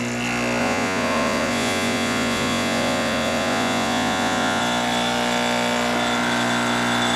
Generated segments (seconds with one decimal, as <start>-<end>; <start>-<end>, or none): 0.6-4.6